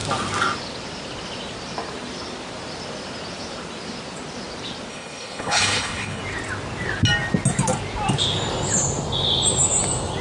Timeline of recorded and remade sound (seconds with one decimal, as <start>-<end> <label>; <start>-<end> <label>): 0.0-4.9 recorded; 4.9-6.2 remade; 6.2-10.2 recorded